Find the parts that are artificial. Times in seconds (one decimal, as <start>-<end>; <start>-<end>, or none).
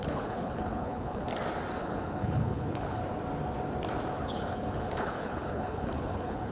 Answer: 0.0-1.3; 1.8-3.0; 4.2-6.5